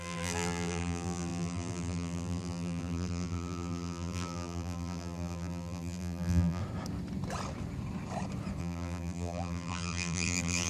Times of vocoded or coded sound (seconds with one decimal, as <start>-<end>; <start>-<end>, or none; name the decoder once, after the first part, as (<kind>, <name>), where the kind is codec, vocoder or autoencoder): 0.0-6.6 (vocoder, BigVGAN v2); 8.6-10.7

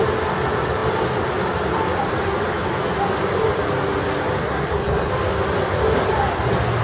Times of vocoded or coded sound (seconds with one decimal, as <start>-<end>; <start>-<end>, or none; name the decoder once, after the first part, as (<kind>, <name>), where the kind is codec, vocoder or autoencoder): 4.4-5.1 (codec, SNAC)